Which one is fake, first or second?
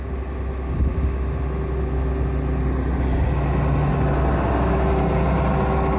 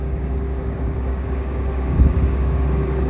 second